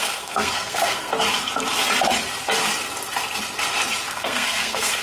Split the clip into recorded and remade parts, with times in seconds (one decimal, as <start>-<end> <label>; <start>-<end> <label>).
0.0-1.1 remade; 1.1-4.1 recorded; 4.1-5.0 remade